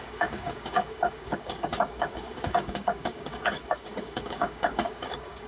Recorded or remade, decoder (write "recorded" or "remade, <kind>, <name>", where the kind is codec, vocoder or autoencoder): remade, codec, DAC